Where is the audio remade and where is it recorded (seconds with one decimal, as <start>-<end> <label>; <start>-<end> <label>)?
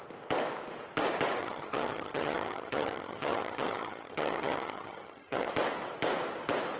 0.0-1.4 recorded; 1.4-5.5 remade; 5.5-6.8 recorded